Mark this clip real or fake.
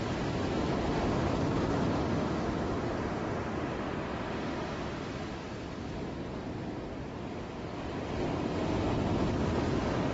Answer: real